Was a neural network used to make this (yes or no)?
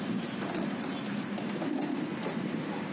no